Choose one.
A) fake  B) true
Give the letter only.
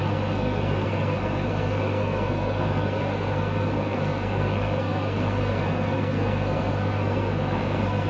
A